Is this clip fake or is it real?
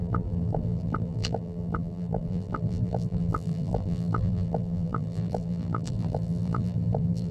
fake